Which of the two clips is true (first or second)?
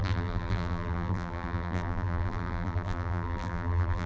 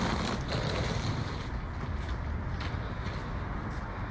second